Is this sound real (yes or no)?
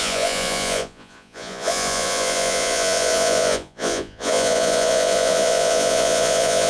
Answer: no